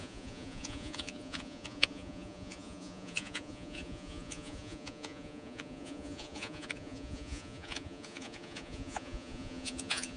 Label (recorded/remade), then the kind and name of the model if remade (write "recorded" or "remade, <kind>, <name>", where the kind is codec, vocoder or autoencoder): remade, vocoder, Vocos